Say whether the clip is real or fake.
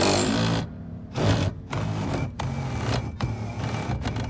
real